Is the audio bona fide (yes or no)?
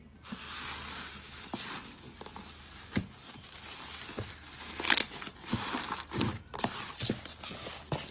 yes